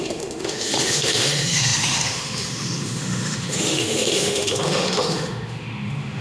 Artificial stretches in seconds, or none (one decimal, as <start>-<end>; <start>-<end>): 0.0-6.2